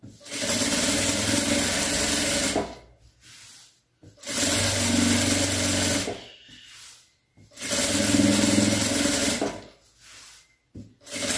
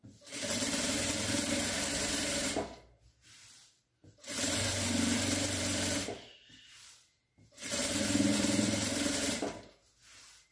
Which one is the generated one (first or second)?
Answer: second